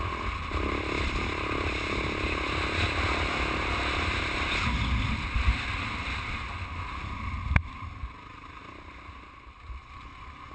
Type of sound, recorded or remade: recorded